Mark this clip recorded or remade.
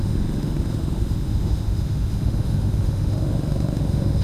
remade